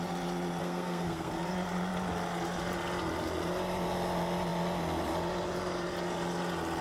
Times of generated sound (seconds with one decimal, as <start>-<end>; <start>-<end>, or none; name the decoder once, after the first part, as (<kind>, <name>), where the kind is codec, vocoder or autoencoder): 0.6-1.3 (codec, SNAC)